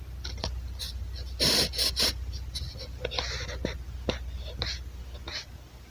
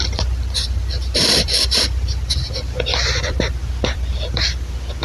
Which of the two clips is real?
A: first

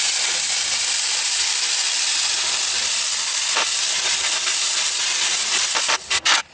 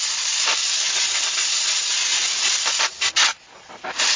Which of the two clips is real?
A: second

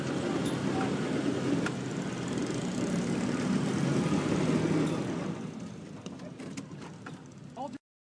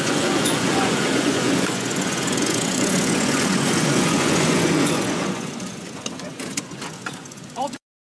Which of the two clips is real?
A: first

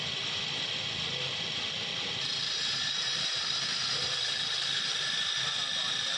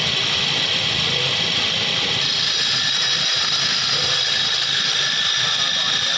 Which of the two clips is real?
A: first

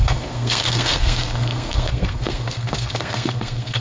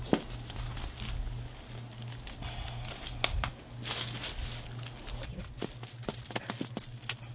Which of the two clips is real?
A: second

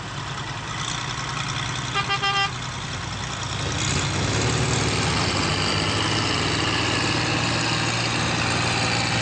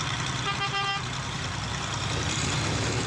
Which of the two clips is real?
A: first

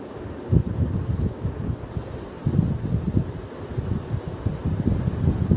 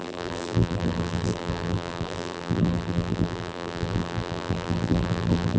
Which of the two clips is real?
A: first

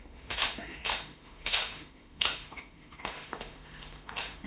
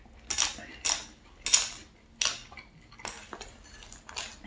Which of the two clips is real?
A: second